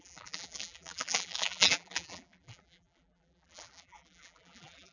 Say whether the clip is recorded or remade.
remade